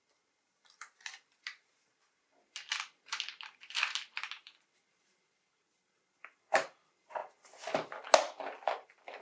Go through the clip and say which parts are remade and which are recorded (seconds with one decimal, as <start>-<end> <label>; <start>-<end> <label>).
0.0-9.2 recorded